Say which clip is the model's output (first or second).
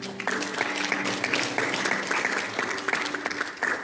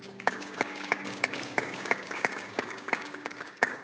second